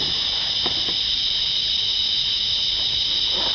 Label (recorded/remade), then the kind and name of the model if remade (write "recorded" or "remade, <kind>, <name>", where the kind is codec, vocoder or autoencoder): recorded